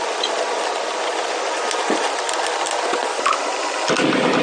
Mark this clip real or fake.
real